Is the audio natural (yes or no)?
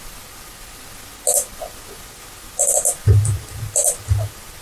yes